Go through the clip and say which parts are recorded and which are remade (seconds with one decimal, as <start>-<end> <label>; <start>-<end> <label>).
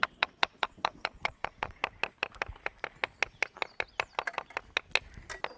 0.0-1.8 remade; 1.8-5.6 recorded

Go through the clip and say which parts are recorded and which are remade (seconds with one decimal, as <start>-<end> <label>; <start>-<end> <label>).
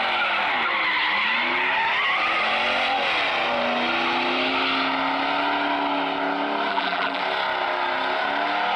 0.0-6.7 recorded; 6.7-7.2 remade; 7.2-8.8 recorded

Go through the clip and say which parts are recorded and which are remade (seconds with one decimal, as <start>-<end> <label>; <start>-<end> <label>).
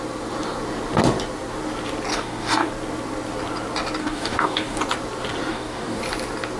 0.0-2.1 recorded; 2.1-2.7 remade; 2.7-4.0 recorded; 4.0-4.8 remade; 4.8-5.5 recorded; 5.5-6.0 remade; 6.0-6.6 recorded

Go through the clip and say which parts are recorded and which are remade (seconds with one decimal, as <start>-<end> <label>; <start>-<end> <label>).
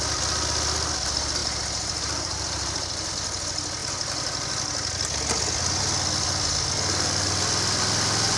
0.0-1.4 recorded; 1.4-3.1 remade; 3.1-8.4 recorded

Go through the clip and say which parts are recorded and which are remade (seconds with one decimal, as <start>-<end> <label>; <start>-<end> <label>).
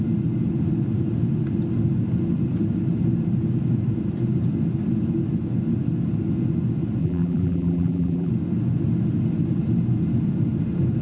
0.0-7.0 recorded; 7.0-8.3 remade; 8.3-11.0 recorded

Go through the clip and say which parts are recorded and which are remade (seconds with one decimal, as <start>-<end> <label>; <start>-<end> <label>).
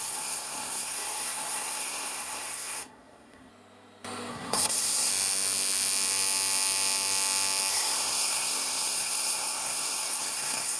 0.0-3.5 remade; 3.5-4.3 recorded; 4.3-5.1 remade; 5.1-7.7 recorded; 7.7-10.8 remade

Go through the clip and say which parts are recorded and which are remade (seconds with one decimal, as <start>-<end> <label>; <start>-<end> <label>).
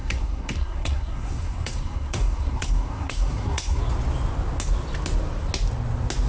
0.0-3.8 remade; 3.8-6.3 recorded